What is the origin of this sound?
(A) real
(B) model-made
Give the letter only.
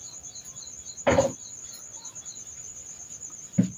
A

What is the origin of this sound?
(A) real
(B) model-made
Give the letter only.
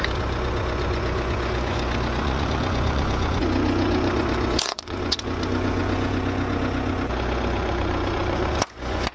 B